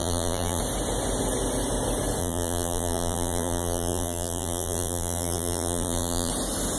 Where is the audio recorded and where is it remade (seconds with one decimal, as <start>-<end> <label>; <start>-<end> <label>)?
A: 0.0-0.6 remade; 0.6-2.2 recorded; 2.2-6.3 remade; 6.3-6.8 recorded